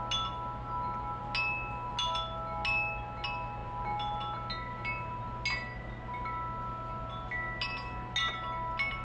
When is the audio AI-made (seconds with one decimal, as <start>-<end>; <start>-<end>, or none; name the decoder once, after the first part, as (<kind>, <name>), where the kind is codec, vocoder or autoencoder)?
none